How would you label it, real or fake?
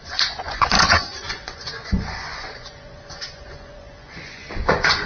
fake